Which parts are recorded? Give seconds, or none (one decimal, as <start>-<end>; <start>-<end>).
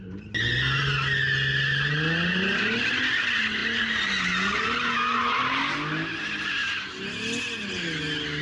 0.0-8.4